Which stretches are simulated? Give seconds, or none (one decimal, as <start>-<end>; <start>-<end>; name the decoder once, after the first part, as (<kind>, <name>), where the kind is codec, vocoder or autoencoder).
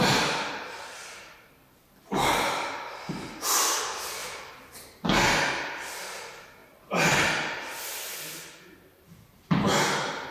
0.0-4.2 (vocoder, BigVGAN v2); 5.1-9.5